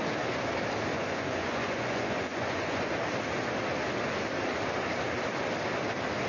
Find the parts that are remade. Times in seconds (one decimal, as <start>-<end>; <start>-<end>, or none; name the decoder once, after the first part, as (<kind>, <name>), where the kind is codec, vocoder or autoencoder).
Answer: 0.9-2.9 (vocoder, Vocos)